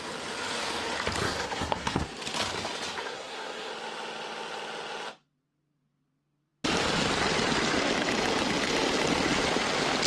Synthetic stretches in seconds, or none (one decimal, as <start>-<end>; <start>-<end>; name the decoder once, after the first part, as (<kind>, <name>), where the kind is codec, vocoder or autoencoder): 1.2-2.0 (codec, SNAC); 3.0-3.7